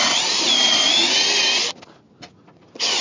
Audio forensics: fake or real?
real